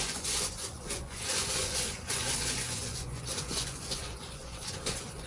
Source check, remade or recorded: remade